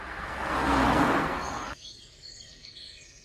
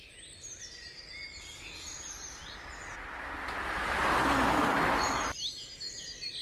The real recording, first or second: second